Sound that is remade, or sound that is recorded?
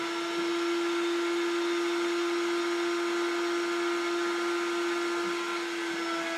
recorded